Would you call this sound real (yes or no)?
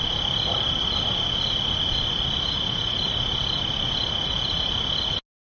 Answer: yes